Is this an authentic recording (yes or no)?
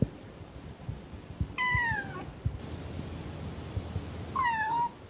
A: yes